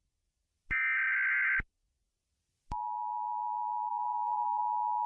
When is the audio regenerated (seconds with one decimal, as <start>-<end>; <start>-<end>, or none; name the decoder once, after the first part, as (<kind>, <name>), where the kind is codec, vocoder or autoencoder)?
3.9-4.6 (vocoder, BigVGAN v2)